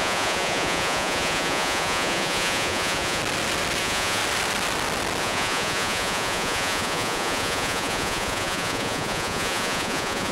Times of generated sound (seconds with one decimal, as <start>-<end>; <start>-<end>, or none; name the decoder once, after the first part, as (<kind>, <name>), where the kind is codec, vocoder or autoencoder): 0.0-3.2 (vocoder, Vocos); 3.8-4.2; 5.2-10.3